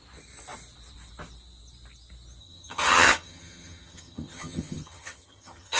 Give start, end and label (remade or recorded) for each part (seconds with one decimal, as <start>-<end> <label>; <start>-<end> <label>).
0.0-2.4 recorded; 2.4-5.8 remade